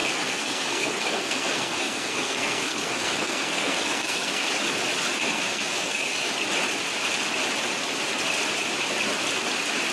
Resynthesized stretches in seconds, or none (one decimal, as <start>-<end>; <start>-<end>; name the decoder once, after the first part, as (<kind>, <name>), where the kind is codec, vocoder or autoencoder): 0.0-4.5 (codec, SNAC); 5.1-6.3